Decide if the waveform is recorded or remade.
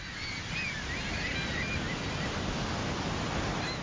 recorded